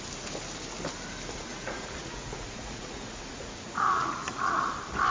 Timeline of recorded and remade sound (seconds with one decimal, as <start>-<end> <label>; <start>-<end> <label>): 0.0-1.5 recorded; 1.5-4.6 remade; 4.6-5.1 recorded